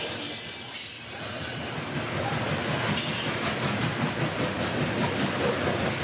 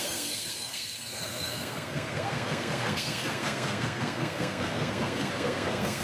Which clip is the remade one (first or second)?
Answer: second